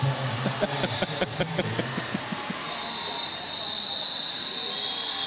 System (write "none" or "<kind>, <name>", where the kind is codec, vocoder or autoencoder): none